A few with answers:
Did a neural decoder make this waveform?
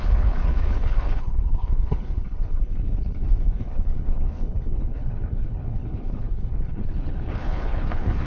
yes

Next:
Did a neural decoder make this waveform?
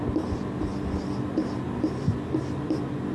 no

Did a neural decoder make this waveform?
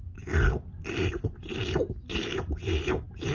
no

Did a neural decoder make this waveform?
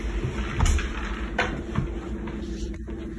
no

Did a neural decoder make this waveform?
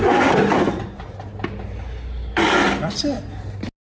no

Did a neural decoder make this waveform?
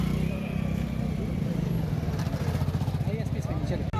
no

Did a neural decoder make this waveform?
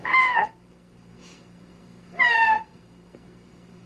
yes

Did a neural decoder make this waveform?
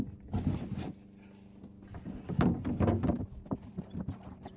no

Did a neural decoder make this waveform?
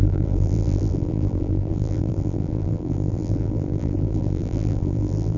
yes